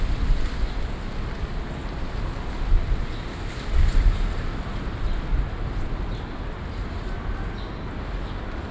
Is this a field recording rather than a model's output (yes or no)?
yes